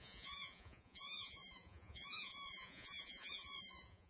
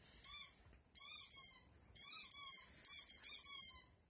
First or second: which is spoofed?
first